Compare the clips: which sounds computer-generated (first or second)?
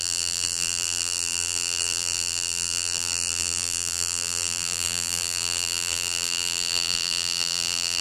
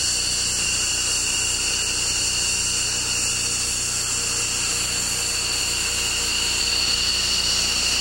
first